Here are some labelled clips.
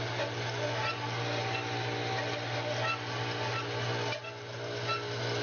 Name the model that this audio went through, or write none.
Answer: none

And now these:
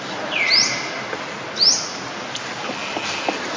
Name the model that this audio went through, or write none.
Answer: none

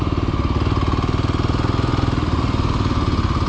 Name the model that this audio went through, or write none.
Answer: none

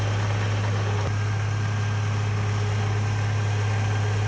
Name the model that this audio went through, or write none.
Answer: none